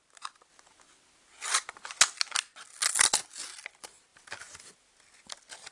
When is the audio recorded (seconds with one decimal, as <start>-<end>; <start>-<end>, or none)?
0.0-5.7